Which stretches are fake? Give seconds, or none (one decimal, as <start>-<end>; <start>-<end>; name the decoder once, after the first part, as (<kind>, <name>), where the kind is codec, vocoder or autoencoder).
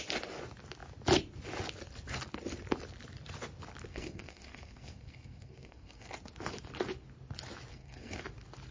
3.9-6.1 (codec, SNAC); 7.7-8.2